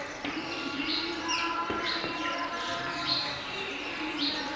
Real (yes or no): no